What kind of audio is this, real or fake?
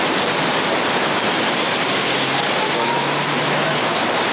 fake